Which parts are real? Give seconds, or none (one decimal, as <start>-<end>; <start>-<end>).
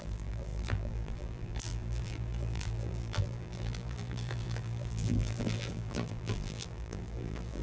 none